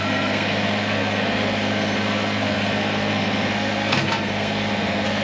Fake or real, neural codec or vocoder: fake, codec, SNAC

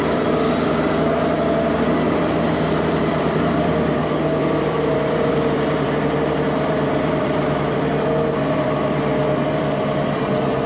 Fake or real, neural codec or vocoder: fake, vocoder, BigVGAN v2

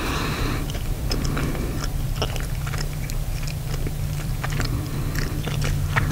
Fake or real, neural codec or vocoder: fake, vocoder, BigVGAN v2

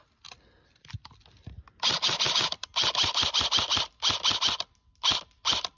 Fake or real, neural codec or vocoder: real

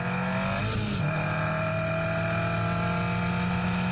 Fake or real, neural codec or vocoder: real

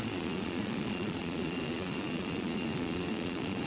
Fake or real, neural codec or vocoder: fake, vocoder, Vocos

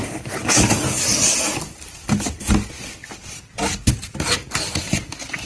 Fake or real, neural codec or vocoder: real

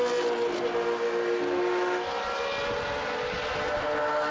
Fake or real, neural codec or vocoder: real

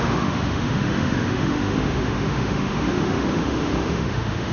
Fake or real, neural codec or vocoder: fake, autoencoder, DAC-VAE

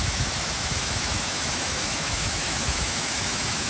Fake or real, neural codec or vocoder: fake, autoencoder, DAC-VAE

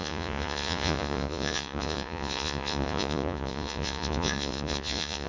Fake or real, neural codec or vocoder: fake, vocoder, Vocos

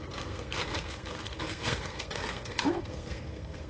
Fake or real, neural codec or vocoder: fake, codec, SNAC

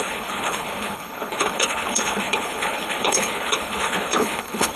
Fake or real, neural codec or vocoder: fake, codec, HILCodec